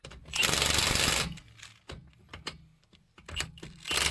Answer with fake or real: real